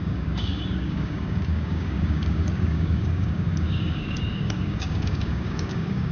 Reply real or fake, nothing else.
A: fake